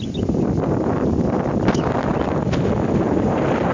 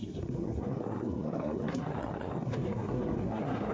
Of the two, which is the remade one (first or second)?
second